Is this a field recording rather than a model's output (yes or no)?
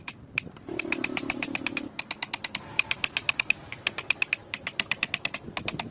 no